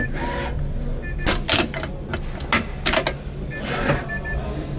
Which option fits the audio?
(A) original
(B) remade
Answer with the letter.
A